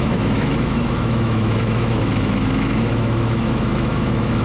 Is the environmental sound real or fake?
fake